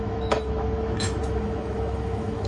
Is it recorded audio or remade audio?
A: remade